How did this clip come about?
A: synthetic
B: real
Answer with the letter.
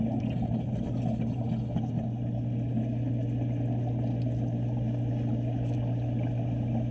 B